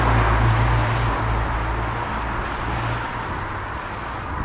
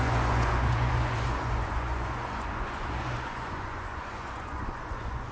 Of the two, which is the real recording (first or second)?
first